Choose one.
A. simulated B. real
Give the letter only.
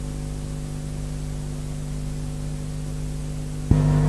B